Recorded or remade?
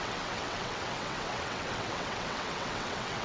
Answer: remade